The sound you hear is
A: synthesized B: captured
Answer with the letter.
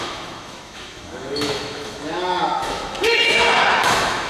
A